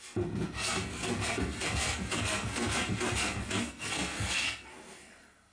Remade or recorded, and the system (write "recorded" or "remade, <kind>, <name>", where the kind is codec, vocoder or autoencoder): remade, codec, SNAC